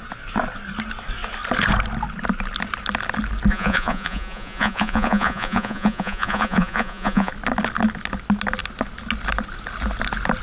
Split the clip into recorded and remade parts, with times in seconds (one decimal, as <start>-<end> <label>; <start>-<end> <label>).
0.0-3.5 recorded; 3.5-7.3 remade; 7.3-10.4 recorded